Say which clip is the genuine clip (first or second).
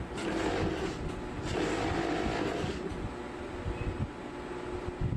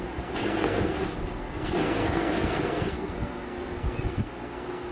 first